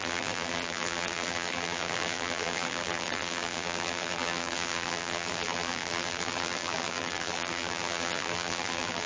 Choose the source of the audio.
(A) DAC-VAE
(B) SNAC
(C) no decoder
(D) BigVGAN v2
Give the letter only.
D